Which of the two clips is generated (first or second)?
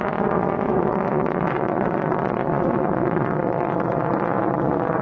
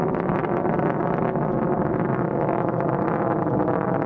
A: first